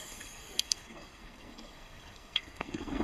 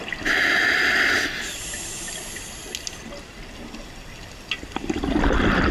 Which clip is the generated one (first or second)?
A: first